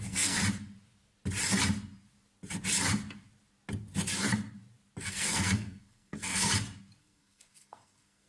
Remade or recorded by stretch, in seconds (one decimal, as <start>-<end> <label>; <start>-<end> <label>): 0.0-0.4 remade; 0.4-5.0 recorded; 5.0-6.5 remade; 6.5-7.0 recorded; 7.0-8.3 remade